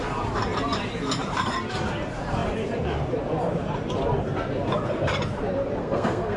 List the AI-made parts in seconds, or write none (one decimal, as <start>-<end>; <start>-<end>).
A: 5.8-6.4